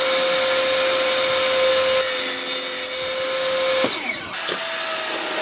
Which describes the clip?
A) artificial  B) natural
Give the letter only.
B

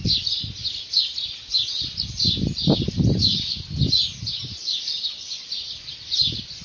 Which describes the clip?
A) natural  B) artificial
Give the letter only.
A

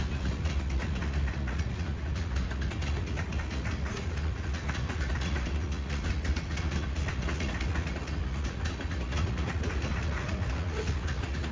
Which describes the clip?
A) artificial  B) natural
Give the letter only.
A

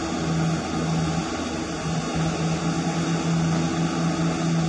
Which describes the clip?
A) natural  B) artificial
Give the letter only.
A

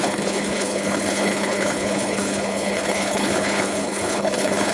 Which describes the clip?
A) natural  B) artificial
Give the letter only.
B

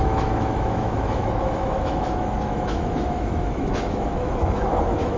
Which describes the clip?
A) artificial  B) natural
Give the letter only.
A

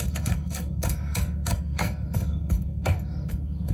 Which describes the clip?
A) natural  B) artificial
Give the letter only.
B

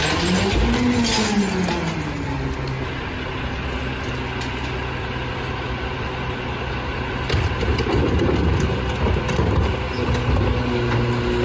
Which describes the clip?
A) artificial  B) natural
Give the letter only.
B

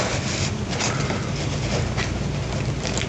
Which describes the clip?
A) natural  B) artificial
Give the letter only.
A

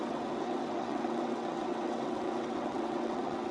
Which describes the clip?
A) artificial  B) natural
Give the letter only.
A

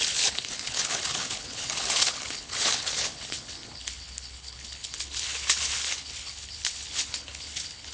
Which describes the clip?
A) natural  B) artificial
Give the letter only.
B